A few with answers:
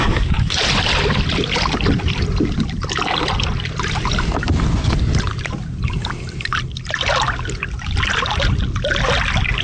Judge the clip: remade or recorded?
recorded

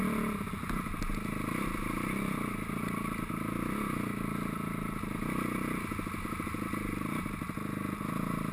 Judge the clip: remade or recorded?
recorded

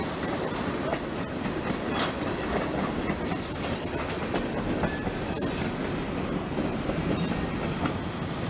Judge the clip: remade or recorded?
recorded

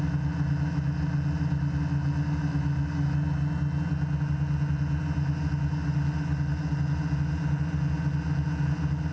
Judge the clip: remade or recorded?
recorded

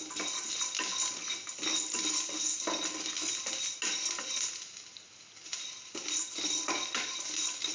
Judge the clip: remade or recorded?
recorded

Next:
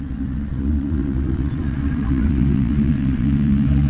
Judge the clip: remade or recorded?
remade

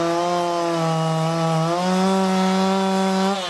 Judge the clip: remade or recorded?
recorded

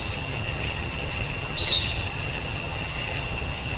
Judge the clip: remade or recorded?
remade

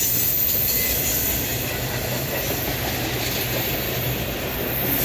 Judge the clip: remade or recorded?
recorded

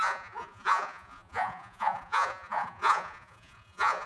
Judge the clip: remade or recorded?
remade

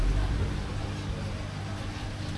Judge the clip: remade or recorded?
recorded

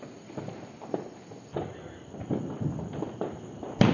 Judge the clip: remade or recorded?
recorded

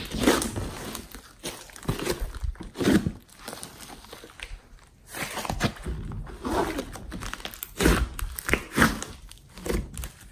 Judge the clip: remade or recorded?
recorded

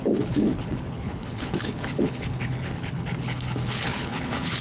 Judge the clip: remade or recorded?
remade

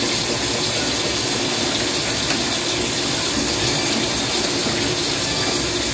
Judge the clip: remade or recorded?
recorded